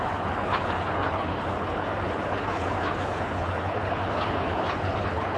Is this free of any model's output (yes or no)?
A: no